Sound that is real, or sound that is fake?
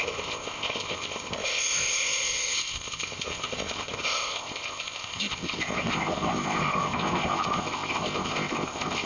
fake